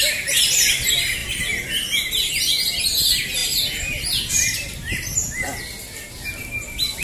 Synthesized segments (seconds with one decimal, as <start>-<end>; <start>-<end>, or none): none